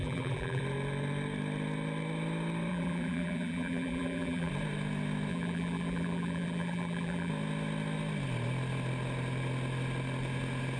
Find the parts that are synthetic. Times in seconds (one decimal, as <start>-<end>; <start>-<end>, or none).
0.0-0.6; 2.7-4.5; 5.3-7.3